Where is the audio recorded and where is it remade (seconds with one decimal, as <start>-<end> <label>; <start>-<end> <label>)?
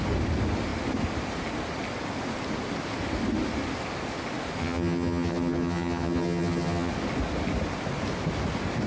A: 0.0-4.6 recorded; 4.6-6.9 remade; 6.9-8.9 recorded